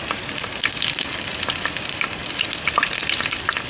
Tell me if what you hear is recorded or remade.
recorded